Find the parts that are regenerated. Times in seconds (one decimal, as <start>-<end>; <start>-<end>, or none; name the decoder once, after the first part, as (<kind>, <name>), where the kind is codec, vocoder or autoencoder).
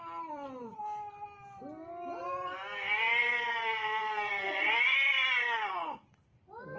3.2-4.7 (vocoder, WaveNeXt); 5.4-6.1